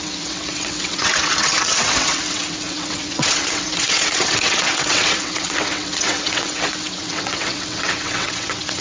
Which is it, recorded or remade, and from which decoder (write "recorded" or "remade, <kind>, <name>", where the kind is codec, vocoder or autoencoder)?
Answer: remade, vocoder, WaveNeXt